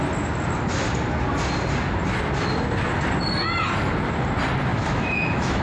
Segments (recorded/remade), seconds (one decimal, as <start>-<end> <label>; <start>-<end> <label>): 0.0-4.7 recorded; 4.7-5.6 remade